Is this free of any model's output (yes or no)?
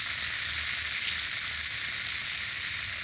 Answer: yes